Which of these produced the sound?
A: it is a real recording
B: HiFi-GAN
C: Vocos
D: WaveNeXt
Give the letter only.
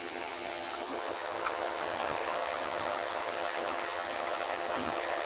B